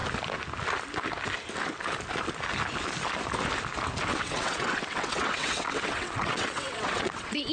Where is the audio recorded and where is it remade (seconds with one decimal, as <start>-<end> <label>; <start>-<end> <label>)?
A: 0.0-4.2 recorded; 4.2-7.5 remade